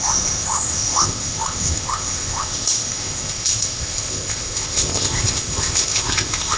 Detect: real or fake fake